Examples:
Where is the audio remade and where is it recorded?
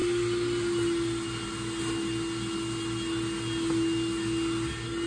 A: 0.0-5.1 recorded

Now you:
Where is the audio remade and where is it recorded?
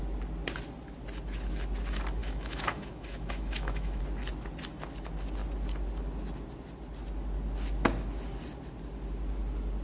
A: 0.0-2.2 recorded; 2.2-4.0 remade; 4.0-9.8 recorded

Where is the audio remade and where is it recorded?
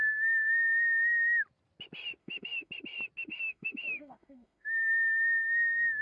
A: 0.0-2.2 recorded; 2.2-2.7 remade; 2.7-3.3 recorded; 3.3-6.0 remade